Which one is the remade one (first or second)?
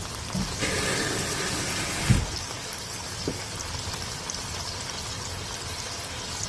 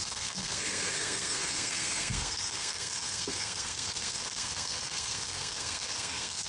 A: second